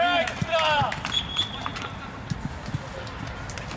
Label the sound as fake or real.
real